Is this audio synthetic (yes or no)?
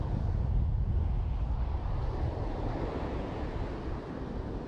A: no